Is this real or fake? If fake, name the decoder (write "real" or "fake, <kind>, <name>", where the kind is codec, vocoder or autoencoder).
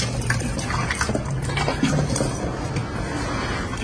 real